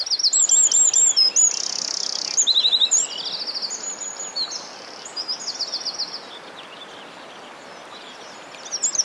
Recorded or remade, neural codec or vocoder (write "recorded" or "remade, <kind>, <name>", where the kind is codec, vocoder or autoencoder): recorded